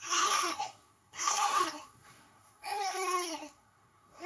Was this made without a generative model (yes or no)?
no